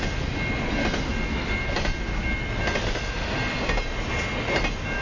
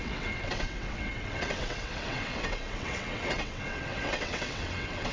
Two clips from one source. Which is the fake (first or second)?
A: second